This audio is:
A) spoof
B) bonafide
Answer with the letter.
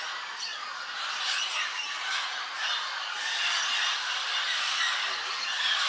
B